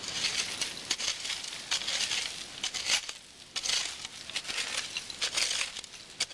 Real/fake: real